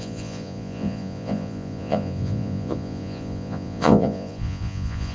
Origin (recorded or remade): remade